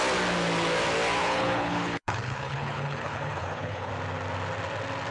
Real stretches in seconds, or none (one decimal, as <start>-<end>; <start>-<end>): 0.0-1.2; 3.9-5.1